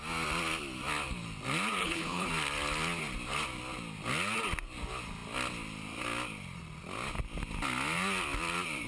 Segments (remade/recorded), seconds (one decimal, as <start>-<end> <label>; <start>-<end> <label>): 0.0-1.8 recorded; 1.8-2.3 remade; 2.3-8.9 recorded